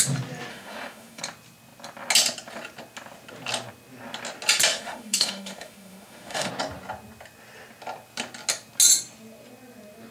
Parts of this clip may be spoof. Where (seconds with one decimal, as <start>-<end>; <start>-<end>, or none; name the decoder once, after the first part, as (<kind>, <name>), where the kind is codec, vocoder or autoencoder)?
0.5-1.2 (autoencoder, DAC-VAE); 4.7-6.5